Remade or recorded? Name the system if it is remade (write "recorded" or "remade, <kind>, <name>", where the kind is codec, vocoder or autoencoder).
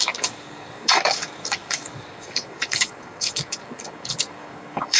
remade, codec, DAC